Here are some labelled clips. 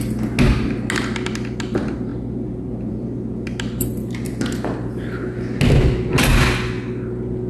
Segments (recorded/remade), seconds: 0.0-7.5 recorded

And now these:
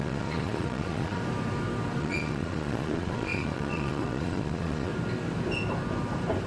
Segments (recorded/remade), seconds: 0.0-1.2 remade; 1.2-2.0 recorded; 2.0-4.9 remade; 4.9-6.5 recorded

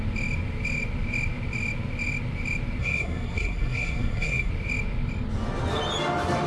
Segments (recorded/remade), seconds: 0.0-2.8 recorded; 2.8-4.5 remade; 4.5-6.5 recorded